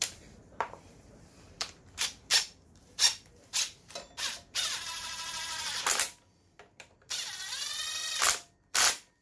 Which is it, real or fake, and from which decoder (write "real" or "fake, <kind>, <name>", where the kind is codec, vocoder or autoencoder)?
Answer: fake, vocoder, BigVGAN v2